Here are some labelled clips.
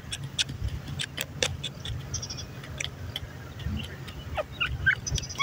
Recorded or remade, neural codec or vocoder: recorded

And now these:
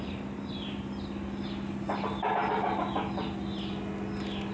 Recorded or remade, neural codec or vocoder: recorded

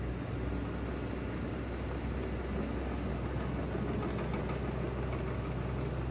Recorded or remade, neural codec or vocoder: recorded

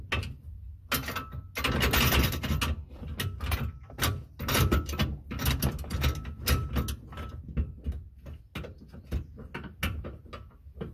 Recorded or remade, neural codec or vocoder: recorded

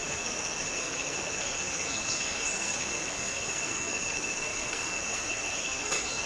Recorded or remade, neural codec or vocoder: remade, codec, SNAC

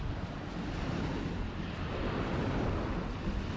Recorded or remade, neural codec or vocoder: recorded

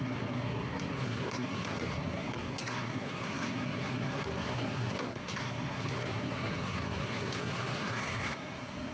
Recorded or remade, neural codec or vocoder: remade, codec, SNAC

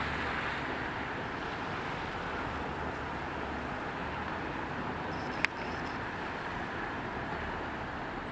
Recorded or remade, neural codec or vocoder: recorded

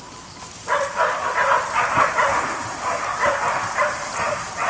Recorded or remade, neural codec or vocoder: recorded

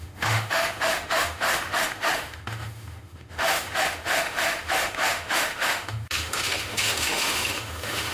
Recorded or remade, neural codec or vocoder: remade, autoencoder, DAC-VAE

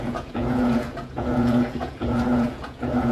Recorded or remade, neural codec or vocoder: remade, vocoder, Vocos